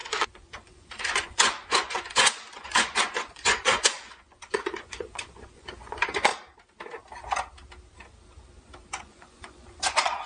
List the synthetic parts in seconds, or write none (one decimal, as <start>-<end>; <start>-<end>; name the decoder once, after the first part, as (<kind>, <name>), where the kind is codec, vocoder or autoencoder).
0.0-6.3 (vocoder, Vocos); 9.0-10.3